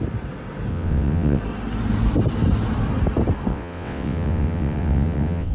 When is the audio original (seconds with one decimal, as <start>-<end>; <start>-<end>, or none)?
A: 0.0-0.7; 1.4-3.5